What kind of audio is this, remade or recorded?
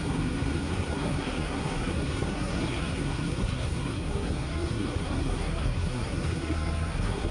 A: remade